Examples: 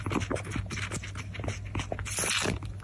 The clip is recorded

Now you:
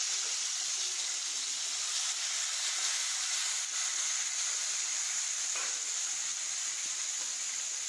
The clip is recorded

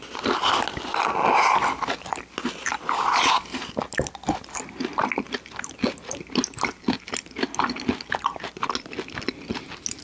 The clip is recorded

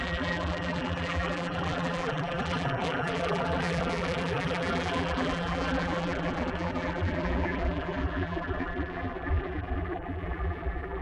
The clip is remade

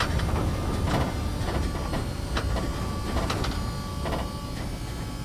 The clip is recorded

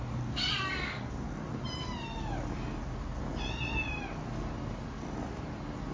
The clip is recorded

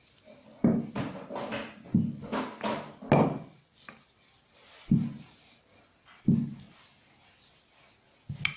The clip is recorded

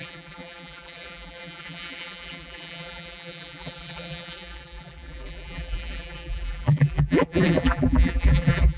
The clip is remade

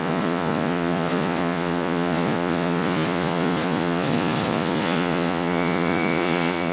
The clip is remade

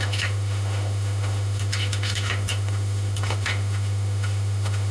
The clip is remade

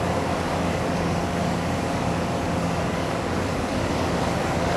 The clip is remade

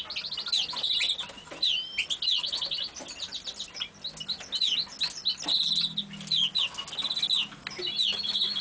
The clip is recorded